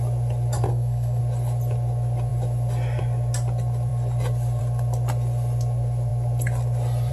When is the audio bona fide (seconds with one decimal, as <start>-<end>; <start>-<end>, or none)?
0.0-0.7; 1.2-7.1